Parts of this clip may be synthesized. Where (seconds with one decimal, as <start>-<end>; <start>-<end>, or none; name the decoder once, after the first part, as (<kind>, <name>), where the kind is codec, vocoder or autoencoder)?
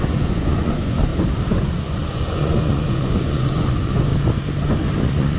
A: 0.0-1.1 (vocoder, Vocos); 1.6-4.1; 5.0-5.4